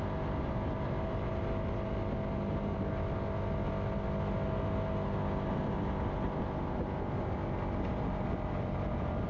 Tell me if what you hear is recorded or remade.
recorded